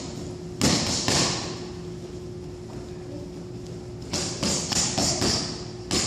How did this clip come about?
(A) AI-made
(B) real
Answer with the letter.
B